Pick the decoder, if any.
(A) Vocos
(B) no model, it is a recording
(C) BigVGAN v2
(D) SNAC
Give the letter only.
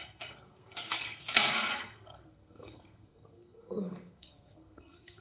D